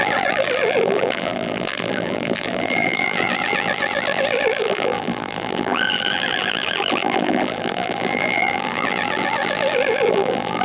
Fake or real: fake